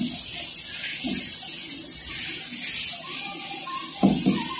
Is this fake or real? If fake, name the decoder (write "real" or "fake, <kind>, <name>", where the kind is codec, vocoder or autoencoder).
real